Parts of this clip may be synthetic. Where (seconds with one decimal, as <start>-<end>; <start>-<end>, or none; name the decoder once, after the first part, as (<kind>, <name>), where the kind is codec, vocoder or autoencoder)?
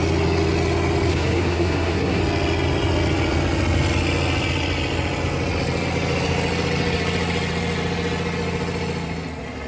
1.1-2.2 (codec, SNAC)